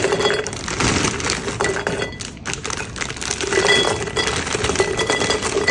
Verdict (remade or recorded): recorded